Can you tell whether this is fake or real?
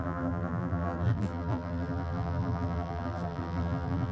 fake